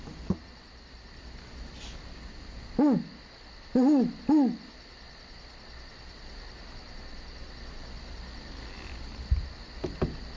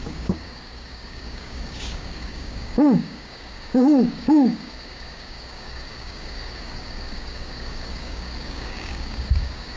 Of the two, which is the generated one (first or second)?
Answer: second